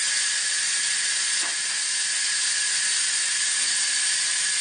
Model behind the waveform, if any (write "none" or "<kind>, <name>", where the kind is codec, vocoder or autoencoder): none